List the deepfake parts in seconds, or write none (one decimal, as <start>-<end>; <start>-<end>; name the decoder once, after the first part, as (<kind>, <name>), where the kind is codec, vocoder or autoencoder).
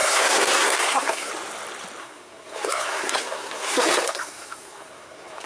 0.0-1.3 (codec, SNAC); 2.0-5.5